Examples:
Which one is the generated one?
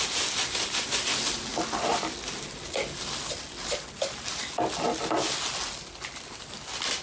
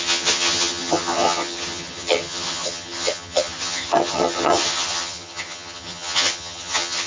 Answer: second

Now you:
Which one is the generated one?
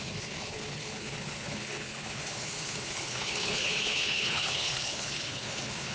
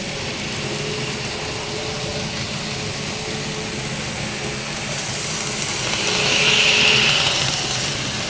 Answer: first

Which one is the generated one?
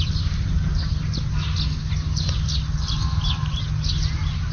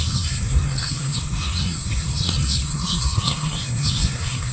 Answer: second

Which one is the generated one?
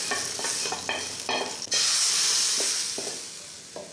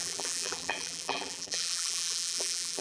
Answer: second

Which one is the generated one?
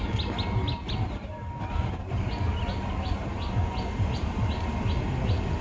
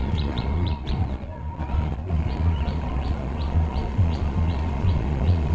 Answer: second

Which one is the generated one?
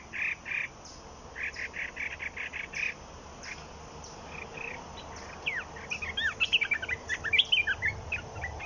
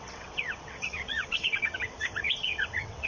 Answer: second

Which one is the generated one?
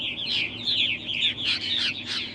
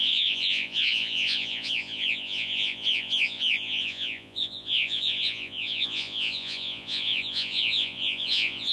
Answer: second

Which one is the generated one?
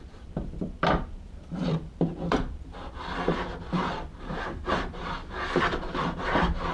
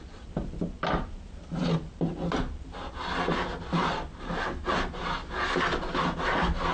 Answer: first